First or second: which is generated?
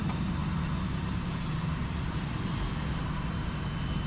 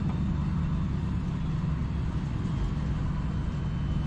first